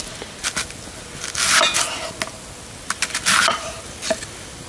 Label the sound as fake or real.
real